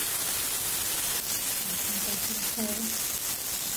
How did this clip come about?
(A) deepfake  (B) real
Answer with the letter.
B